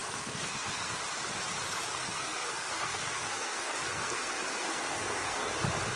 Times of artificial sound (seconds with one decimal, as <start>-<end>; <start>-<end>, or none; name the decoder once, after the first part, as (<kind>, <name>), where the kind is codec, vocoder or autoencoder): 0.0-1.0 (codec, SNAC); 1.9-5.5